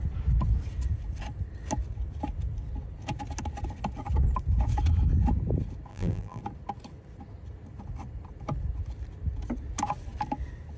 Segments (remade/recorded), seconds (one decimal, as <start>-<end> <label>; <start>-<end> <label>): 0.0-5.9 recorded; 5.9-6.4 remade; 6.4-10.8 recorded